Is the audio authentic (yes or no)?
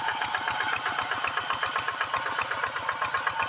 yes